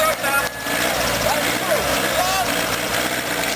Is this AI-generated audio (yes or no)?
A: no